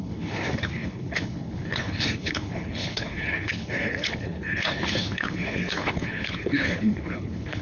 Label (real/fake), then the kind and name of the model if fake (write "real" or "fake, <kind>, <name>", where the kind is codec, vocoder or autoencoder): fake, codec, HILCodec